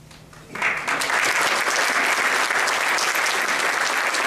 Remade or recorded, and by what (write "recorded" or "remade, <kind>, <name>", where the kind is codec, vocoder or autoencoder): recorded